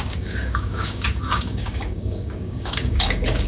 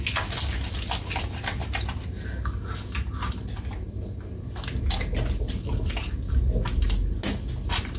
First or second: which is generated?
first